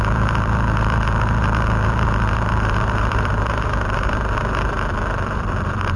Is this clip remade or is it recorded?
remade